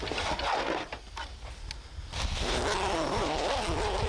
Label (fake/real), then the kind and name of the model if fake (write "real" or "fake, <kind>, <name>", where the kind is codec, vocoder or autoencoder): real